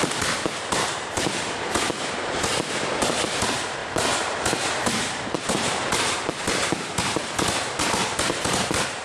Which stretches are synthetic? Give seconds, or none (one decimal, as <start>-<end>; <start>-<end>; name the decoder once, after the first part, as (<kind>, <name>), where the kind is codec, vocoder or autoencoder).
0.0-9.0 (vocoder, BigVGAN v2)